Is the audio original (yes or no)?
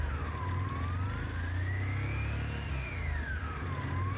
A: yes